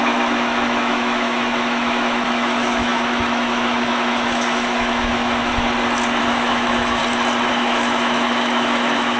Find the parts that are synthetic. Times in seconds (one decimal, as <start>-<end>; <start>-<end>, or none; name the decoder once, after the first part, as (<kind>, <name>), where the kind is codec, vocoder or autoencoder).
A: 0.0-5.5 (autoencoder, DAC-VAE); 6.2-7.0; 7.5-9.2